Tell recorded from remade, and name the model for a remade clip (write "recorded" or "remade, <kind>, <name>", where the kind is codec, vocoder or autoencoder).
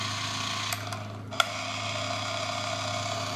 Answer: recorded